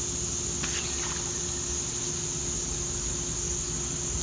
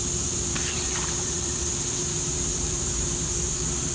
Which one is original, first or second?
first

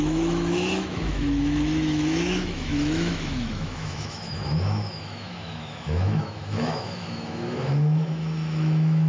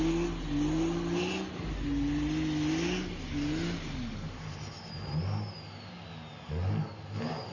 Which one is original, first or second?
second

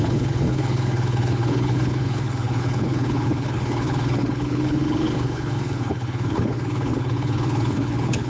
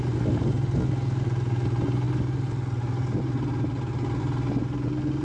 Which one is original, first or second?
second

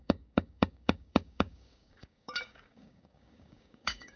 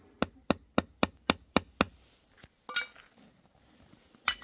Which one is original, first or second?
second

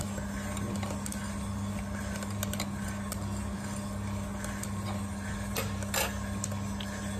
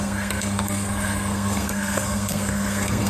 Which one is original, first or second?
first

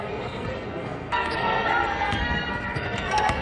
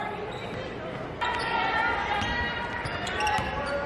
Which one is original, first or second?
second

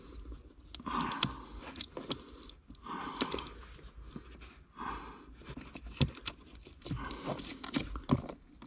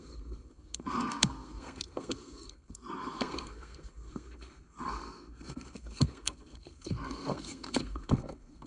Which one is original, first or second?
first